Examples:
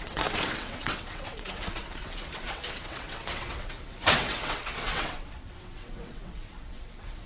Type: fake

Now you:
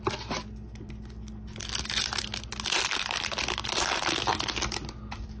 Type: real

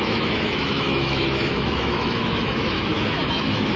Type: fake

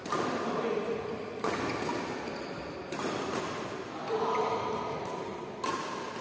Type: real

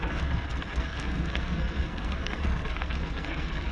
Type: fake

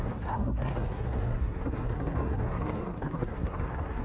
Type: fake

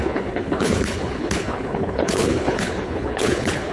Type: fake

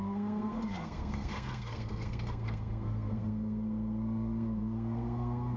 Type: fake